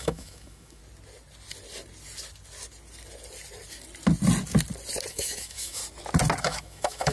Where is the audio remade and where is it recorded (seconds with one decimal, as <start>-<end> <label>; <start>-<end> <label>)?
0.0-0.8 remade; 0.8-5.1 recorded; 5.1-5.8 remade; 5.8-6.4 recorded; 6.4-7.1 remade